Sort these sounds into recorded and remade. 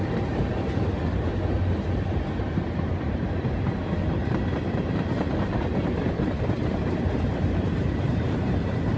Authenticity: remade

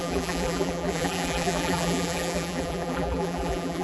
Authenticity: remade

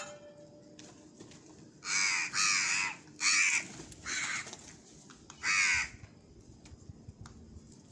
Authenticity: recorded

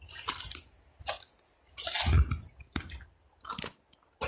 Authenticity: recorded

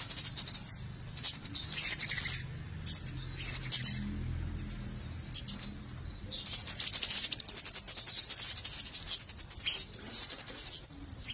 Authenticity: recorded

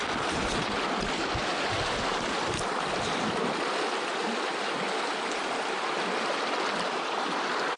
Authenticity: recorded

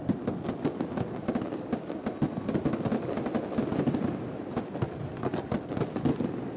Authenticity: remade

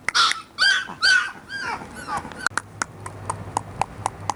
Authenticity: recorded